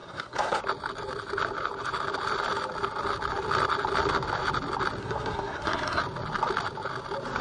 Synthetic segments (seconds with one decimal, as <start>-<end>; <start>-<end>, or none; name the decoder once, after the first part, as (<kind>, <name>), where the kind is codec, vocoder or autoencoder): 0.0-0.6 (codec, SNAC); 5.0-6.0